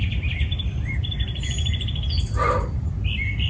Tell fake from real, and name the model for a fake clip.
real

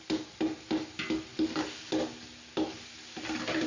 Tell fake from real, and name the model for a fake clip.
real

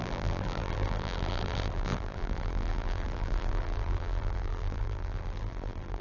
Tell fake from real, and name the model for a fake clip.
fake, vocoder, BigVGAN v2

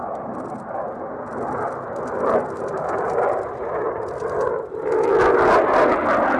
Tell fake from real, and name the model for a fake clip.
real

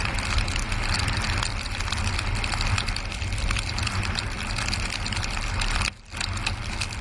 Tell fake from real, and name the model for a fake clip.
real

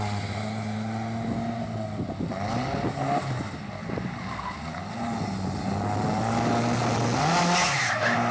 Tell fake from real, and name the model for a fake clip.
real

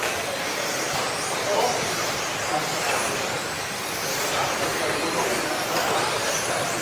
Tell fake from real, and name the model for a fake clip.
fake, vocoder, BigVGAN v2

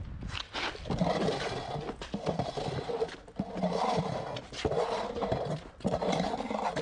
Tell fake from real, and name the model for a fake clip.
real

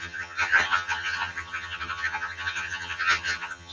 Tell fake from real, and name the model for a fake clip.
fake, vocoder, HiFi-GAN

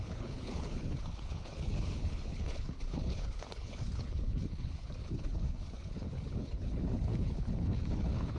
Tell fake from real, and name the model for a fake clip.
fake, codec, HILCodec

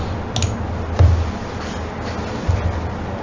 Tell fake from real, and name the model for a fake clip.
real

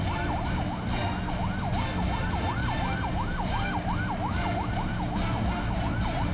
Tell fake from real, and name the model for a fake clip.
real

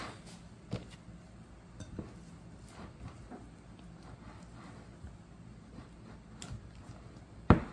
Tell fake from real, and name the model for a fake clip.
real